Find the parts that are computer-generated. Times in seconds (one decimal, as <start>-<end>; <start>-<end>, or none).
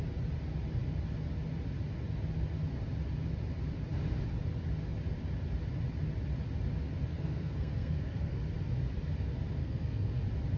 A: 7.1-8.4; 9.6-10.2